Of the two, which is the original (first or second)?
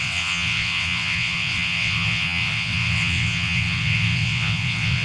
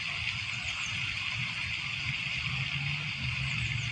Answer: second